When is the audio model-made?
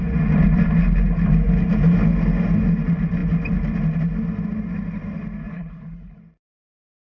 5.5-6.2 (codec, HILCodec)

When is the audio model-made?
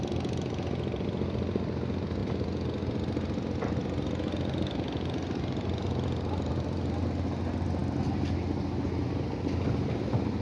none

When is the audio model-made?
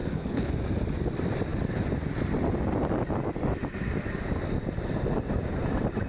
0.0-0.5 (codec, HILCodec)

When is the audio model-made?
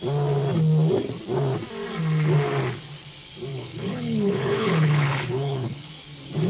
3.5-5.9 (codec, HILCodec)